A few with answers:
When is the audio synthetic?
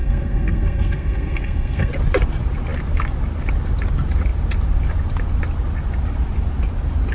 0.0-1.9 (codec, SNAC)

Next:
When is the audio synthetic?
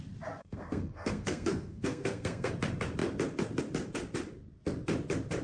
0.4-2.5 (codec, SNAC)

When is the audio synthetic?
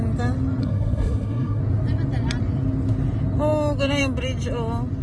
0.6-1.6 (codec, SNAC)